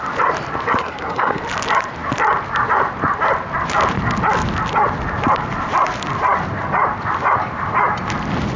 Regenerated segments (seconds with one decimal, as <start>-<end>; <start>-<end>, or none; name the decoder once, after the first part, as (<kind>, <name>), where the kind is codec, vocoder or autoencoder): 0.8-1.4 (codec, SNAC)